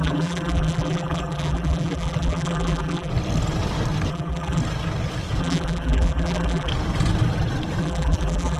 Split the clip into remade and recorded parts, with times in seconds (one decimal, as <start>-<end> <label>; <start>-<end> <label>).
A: 0.0-3.1 remade; 3.1-4.1 recorded; 4.1-4.6 remade; 4.6-5.4 recorded; 5.4-6.7 remade; 6.7-7.8 recorded; 7.8-8.6 remade

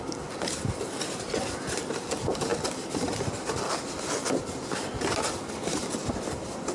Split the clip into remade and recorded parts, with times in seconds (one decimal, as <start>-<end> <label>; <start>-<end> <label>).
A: 0.0-6.7 recorded